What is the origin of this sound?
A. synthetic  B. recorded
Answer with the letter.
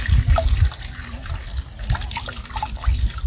B